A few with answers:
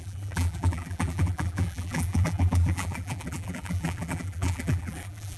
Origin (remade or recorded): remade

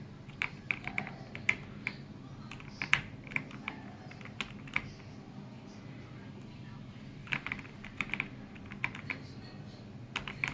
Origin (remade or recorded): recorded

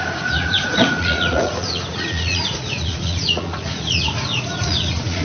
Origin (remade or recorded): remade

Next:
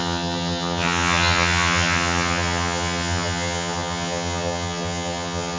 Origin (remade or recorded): remade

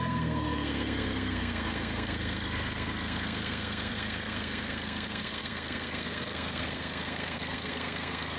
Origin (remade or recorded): remade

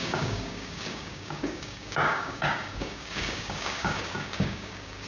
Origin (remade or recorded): remade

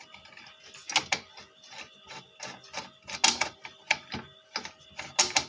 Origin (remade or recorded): recorded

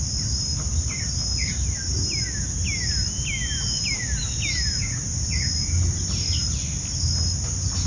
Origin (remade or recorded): recorded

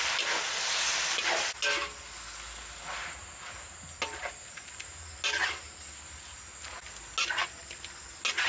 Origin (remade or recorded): recorded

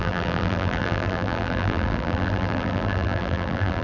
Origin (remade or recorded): remade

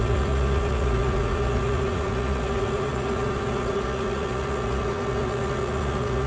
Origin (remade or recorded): remade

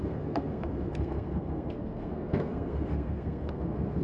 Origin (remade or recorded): remade